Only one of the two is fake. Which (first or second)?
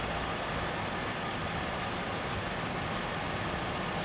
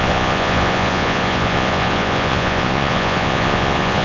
second